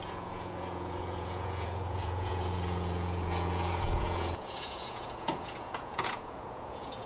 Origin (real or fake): fake